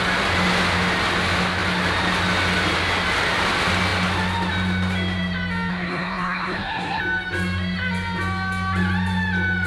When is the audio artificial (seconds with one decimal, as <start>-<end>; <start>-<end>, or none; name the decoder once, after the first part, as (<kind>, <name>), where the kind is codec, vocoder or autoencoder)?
5.7-7.0 (codec, SNAC)